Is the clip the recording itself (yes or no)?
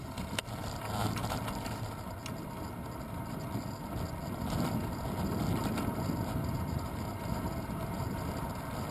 yes